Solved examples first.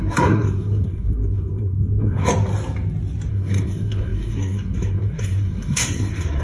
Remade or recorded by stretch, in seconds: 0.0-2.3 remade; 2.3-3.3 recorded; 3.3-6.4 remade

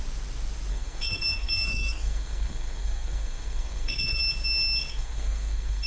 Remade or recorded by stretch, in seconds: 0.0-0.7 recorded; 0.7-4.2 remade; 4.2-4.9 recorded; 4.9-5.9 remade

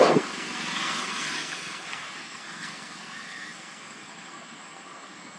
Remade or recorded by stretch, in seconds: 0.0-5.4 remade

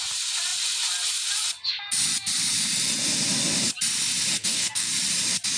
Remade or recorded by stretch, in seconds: 0.0-4.4 recorded; 4.4-4.9 remade; 4.9-5.6 recorded

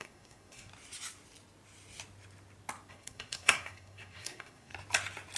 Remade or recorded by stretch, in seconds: 0.0-0.7 remade; 0.7-2.9 recorded; 2.9-4.7 remade; 4.7-5.4 recorded

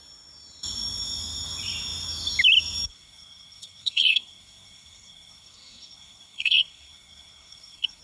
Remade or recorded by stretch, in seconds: 0.0-2.9 recorded; 2.9-8.0 remade